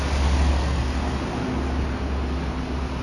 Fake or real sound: real